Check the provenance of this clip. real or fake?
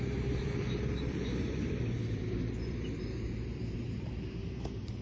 fake